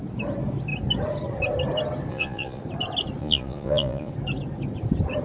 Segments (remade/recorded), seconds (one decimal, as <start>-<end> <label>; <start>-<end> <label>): 0.0-2.1 recorded; 2.1-2.6 remade; 2.6-3.2 recorded; 3.2-4.1 remade; 4.1-5.2 recorded